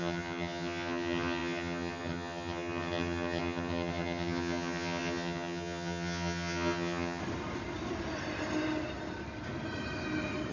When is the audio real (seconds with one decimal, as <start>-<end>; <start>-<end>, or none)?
7.2-10.5